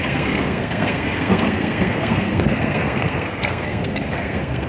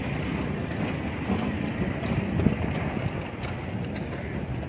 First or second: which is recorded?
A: second